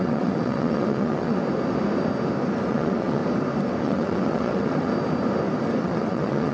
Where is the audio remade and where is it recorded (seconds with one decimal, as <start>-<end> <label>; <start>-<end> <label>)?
0.0-1.4 remade; 1.4-2.7 recorded; 2.7-3.2 remade; 3.2-3.8 recorded; 3.8-4.9 remade; 4.9-5.8 recorded; 5.8-6.5 remade